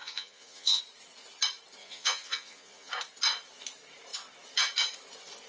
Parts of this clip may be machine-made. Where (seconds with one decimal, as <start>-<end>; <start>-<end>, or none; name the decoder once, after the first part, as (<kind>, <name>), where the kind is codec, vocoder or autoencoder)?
0.0-0.8 (vocoder, Vocos); 1.8-2.9